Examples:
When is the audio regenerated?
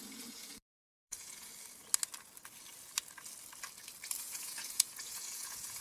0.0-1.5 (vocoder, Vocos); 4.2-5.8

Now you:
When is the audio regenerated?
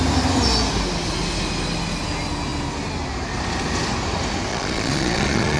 4.5-5.6 (vocoder, Vocos)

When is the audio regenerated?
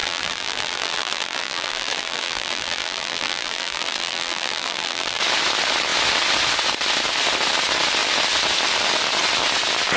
0.0-5.2 (vocoder, BigVGAN v2)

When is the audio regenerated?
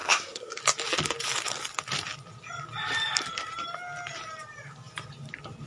0.0-0.6 (codec, SNAC)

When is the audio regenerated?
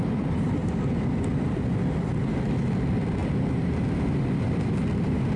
none